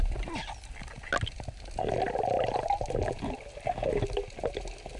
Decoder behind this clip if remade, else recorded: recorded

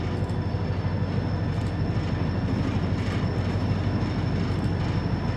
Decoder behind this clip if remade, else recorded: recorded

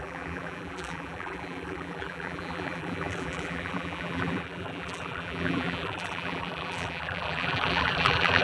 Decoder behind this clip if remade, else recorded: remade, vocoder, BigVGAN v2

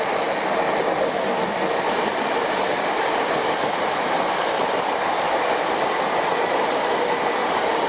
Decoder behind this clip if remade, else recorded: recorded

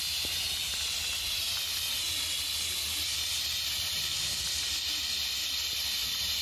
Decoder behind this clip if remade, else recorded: recorded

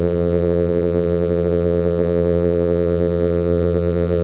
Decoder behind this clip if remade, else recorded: remade, vocoder, BigVGAN v2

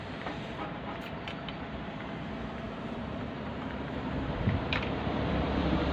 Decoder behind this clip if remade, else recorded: remade, vocoder, BigVGAN v2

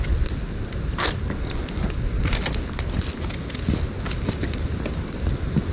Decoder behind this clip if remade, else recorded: recorded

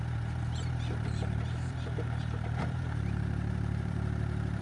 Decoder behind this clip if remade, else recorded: remade, vocoder, BigVGAN v2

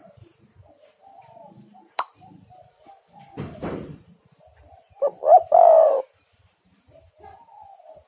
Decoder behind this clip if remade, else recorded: remade, vocoder, BigVGAN v2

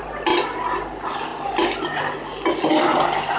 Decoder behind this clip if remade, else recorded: recorded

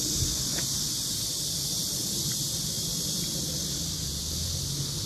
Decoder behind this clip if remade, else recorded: recorded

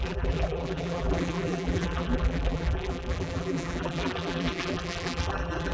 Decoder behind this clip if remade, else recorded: remade, vocoder, BigVGAN v2